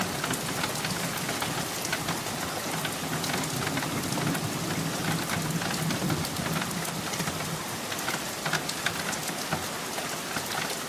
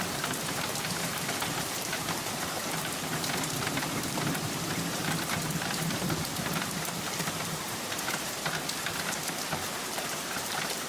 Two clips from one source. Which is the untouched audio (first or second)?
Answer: first